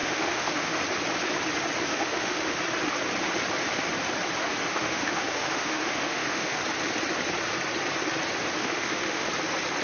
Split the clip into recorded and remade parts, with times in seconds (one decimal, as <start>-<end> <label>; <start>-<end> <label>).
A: 0.0-0.8 remade; 0.8-1.9 recorded; 1.9-2.6 remade; 2.6-4.7 recorded; 4.7-6.6 remade; 6.6-8.6 recorded; 8.6-9.3 remade; 9.3-9.8 recorded